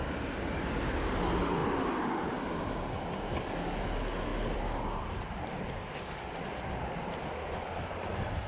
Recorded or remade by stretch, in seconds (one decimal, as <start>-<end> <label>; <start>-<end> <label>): 0.0-4.3 recorded; 4.3-6.7 remade; 6.7-8.5 recorded